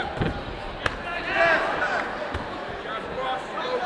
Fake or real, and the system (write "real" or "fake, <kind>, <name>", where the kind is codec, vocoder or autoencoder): real